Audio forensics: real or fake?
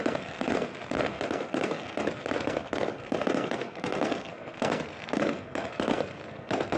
fake